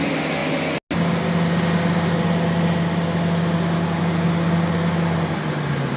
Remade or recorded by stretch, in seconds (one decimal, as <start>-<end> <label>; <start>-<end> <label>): 0.0-6.0 recorded

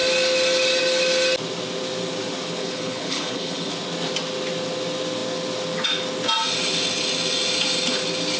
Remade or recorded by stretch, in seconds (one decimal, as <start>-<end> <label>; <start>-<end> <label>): 0.0-2.6 recorded; 2.6-3.7 remade; 3.7-8.4 recorded

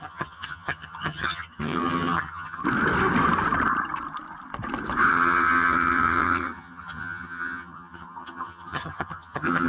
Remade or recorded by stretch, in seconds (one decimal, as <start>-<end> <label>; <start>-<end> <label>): 0.0-2.6 remade; 2.6-5.1 recorded; 5.1-9.7 remade

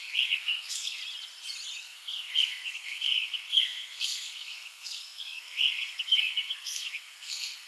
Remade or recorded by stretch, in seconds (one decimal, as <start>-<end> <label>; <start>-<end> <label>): 0.0-1.0 remade; 1.0-1.8 recorded; 1.8-7.7 remade

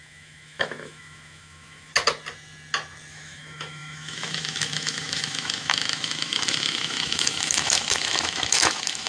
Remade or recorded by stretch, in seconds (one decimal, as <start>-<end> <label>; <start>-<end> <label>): 0.0-1.9 remade; 1.9-3.1 recorded; 3.1-9.1 remade

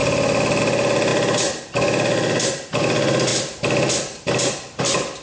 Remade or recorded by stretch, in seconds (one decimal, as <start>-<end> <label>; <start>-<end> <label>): 0.0-0.6 remade; 0.6-3.3 recorded; 3.3-4.8 remade; 4.8-5.2 recorded